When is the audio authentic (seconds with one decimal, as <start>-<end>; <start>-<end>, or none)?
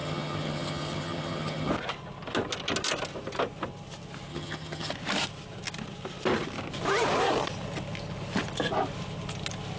1.7-4.3; 4.9-9.8